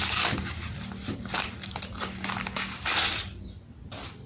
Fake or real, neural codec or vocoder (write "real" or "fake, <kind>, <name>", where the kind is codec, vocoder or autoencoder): real